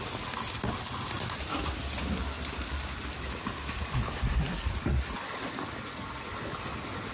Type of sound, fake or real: real